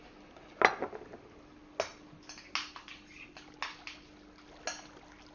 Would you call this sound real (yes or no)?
yes